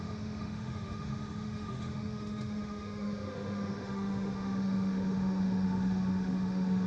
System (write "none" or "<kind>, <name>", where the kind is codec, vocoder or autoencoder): autoencoder, DAC-VAE